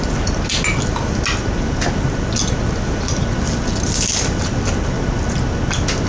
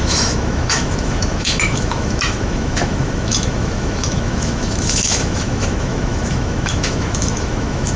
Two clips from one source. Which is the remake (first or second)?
second